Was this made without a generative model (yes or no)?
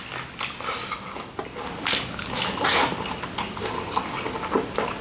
yes